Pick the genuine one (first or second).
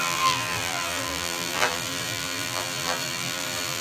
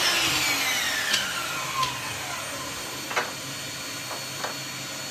second